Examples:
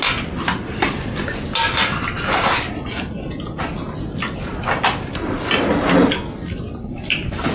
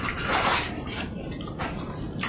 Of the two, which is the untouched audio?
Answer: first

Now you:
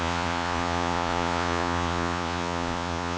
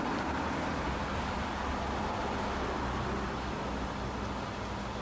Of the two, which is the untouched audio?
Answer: second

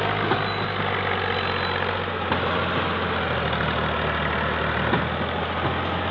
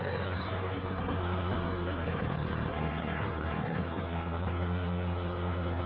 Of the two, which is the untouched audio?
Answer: first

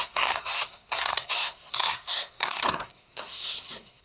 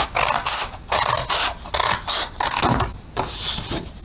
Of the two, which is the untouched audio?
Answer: second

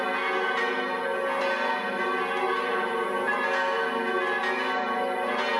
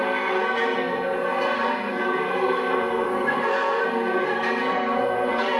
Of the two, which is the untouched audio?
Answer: first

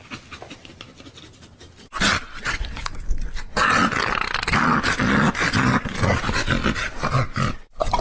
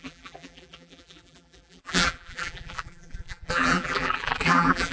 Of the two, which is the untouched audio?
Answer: first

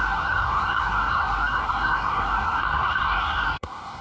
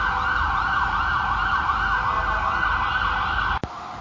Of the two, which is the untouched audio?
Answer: second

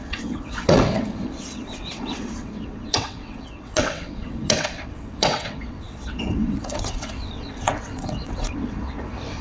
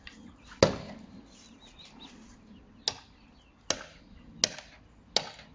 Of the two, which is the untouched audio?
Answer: second